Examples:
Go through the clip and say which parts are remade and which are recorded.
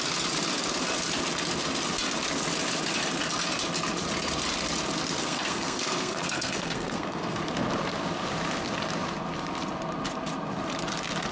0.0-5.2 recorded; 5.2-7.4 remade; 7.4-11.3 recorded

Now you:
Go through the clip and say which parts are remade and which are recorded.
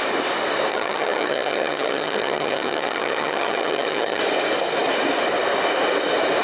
0.0-0.7 recorded; 0.7-4.2 remade; 4.2-6.4 recorded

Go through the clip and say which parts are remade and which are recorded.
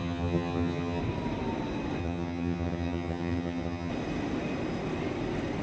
0.0-1.0 remade; 1.0-2.0 recorded; 2.0-3.9 remade; 3.9-5.6 recorded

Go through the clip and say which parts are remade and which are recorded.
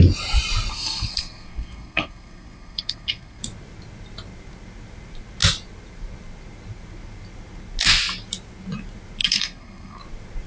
0.0-0.7 recorded; 0.7-3.4 remade; 3.4-9.2 recorded; 9.2-10.0 remade; 10.0-10.5 recorded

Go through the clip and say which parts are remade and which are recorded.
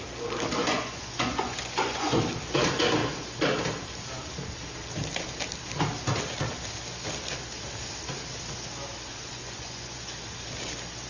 0.0-0.6 recorded; 0.6-2.2 remade; 2.2-9.1 recorded; 9.1-10.1 remade; 10.1-11.1 recorded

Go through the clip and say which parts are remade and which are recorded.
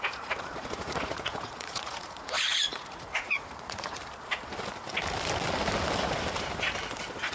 0.0-4.0 remade; 4.0-7.3 recorded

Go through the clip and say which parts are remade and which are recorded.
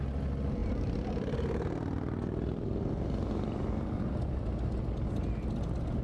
0.0-0.6 recorded; 0.6-4.2 remade; 4.2-6.0 recorded